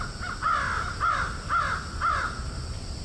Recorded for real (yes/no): yes